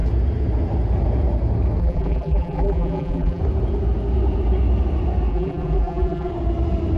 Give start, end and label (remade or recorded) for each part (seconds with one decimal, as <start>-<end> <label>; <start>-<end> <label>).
0.0-1.8 recorded; 1.8-3.4 remade; 3.4-5.3 recorded; 5.3-6.3 remade; 6.3-7.0 recorded